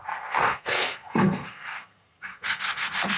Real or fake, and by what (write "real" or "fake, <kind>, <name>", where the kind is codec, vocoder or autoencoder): fake, codec, SNAC